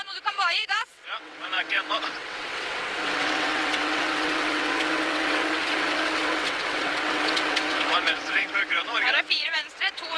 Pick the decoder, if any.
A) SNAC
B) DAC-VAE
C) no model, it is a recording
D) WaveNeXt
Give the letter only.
D